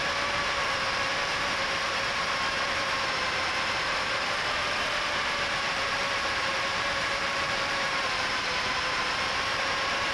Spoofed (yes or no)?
yes